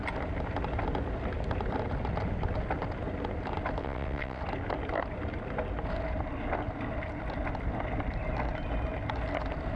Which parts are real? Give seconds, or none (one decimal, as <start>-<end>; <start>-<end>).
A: 0.0-3.8; 4.4-9.8